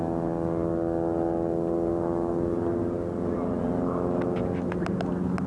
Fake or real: real